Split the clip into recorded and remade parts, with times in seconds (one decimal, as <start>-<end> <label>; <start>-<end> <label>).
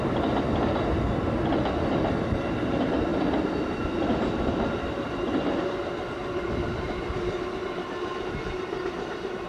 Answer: 0.0-3.1 recorded; 3.1-5.6 remade; 5.6-9.5 recorded